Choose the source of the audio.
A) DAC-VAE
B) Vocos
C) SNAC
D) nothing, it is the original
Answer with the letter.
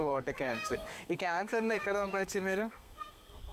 C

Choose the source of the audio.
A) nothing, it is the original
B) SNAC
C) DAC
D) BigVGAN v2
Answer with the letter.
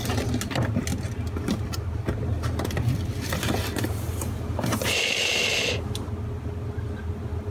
A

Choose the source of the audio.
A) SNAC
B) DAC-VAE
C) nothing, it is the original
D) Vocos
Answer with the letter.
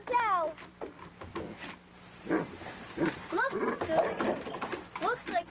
C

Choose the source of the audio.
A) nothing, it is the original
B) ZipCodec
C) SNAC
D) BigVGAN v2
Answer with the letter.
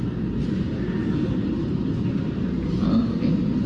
A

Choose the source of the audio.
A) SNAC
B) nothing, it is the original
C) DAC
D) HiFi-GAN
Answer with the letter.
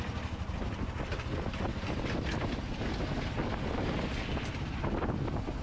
B